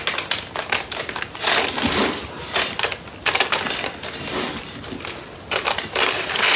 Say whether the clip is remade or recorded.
recorded